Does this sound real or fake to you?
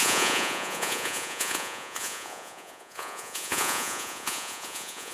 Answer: fake